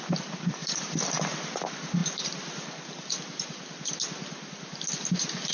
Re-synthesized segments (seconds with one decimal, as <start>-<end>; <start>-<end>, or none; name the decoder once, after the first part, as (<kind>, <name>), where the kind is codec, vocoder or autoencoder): 0.0-2.0 (vocoder, BigVGAN v2)